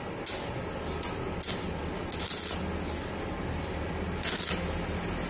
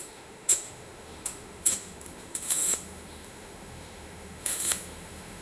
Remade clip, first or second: second